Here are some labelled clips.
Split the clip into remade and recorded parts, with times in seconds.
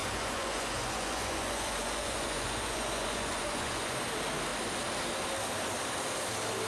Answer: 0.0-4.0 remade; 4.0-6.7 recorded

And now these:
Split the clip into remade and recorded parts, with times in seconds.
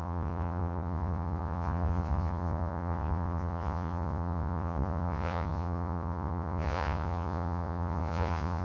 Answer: 0.0-8.6 remade